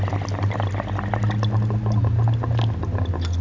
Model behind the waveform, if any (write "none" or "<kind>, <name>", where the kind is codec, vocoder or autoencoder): none